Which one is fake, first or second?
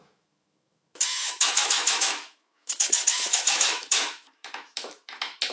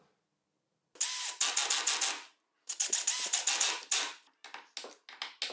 first